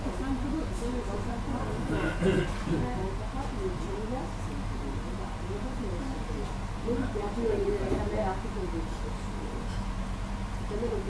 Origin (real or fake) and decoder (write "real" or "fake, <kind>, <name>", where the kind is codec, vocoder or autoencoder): real